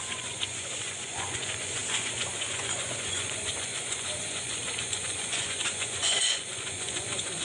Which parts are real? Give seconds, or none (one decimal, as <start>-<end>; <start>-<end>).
none